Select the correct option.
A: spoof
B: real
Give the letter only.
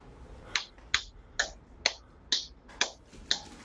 B